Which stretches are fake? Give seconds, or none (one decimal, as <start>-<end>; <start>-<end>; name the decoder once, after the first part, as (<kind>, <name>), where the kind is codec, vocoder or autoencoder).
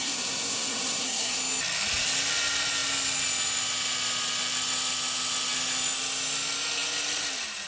0.0-1.4 (codec, SNAC)